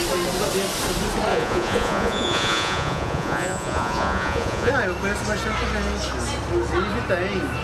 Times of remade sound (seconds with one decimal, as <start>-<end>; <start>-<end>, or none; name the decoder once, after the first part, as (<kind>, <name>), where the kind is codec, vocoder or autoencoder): 1.3-4.7 (vocoder, Vocos)